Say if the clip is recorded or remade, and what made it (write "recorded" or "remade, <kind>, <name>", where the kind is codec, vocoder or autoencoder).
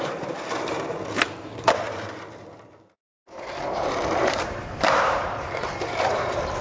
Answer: remade, vocoder, BigVGAN v2